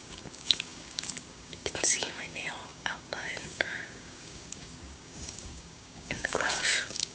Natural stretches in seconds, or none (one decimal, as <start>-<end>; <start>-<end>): none